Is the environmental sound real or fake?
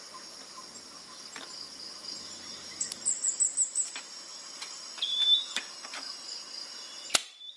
real